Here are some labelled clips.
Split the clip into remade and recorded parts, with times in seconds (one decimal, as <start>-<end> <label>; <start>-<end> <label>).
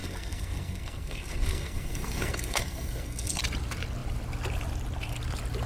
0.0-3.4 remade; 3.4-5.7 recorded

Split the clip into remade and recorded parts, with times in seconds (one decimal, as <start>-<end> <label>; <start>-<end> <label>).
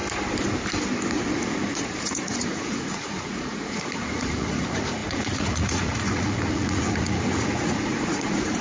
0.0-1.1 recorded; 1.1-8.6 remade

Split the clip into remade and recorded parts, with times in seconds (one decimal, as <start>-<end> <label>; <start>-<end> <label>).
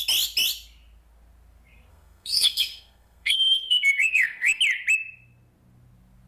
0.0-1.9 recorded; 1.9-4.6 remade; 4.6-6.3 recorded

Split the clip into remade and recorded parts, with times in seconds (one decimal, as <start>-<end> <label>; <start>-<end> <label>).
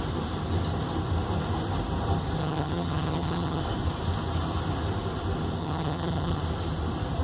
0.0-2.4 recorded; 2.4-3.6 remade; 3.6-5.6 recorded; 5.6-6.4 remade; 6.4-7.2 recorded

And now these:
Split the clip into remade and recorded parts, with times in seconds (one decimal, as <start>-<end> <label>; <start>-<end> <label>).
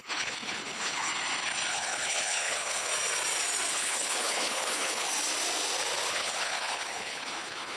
0.0-1.1 remade; 1.1-1.7 recorded; 1.7-2.9 remade; 2.9-3.7 recorded; 3.7-5.1 remade; 5.1-6.1 recorded; 6.1-7.8 remade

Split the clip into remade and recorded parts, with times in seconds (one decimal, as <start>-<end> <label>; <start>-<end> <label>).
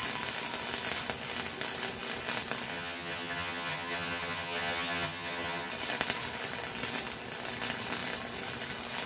0.0-2.7 recorded; 2.7-5.7 remade; 5.7-9.1 recorded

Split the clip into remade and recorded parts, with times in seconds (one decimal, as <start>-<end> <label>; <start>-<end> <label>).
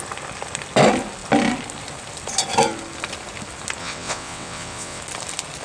0.0-3.8 recorded; 3.8-5.0 remade; 5.0-5.6 recorded